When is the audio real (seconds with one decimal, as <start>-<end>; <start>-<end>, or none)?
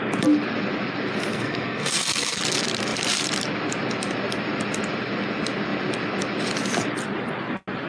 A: 0.0-1.3; 2.4-7.9